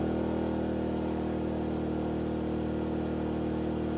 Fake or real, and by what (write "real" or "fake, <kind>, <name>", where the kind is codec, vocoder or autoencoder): real